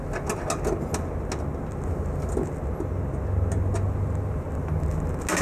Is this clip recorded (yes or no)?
yes